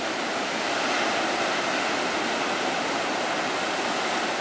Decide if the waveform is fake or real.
real